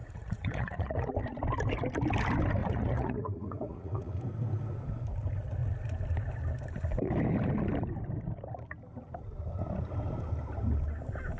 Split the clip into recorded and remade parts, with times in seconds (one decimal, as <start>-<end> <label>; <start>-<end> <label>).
0.0-1.1 remade; 1.1-2.6 recorded; 2.6-4.2 remade; 4.2-11.4 recorded